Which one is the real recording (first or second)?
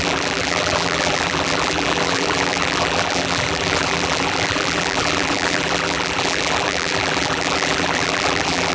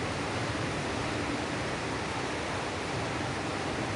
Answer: second